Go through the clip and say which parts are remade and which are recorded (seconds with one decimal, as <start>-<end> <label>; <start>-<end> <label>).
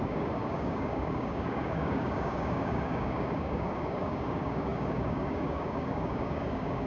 0.0-6.9 remade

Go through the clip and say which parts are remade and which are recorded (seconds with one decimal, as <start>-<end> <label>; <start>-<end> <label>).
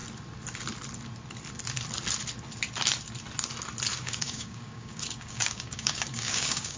0.0-3.9 recorded; 3.9-6.8 remade